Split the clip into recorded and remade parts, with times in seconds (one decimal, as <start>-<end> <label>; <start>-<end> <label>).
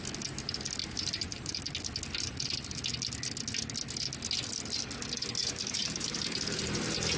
0.0-0.8 recorded; 0.8-1.6 remade; 1.6-5.4 recorded; 5.4-6.6 remade; 6.6-7.2 recorded